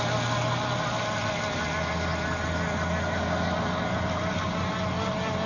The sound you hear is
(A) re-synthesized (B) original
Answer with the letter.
B